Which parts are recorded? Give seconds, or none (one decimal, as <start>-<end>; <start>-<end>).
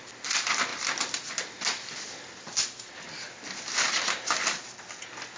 0.0-5.4